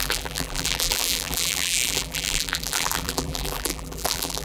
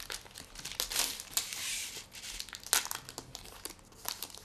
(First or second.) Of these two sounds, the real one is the second